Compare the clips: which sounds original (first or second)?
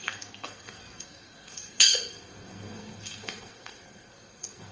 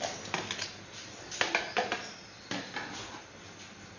second